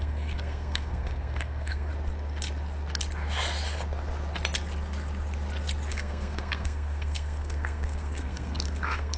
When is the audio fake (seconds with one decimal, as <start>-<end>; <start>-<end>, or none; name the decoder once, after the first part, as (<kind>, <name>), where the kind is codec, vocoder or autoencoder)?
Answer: 0.0-1.9 (codec, SNAC); 5.9-9.2

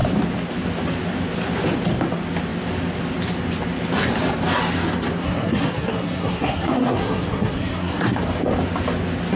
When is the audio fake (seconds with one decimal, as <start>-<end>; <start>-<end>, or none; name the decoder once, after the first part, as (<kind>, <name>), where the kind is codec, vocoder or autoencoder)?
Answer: 5.2-8.2 (codec, SNAC)